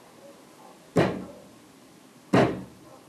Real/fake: real